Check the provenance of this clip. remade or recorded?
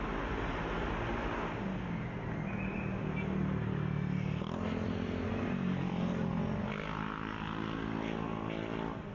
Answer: recorded